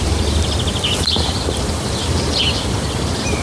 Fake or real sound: fake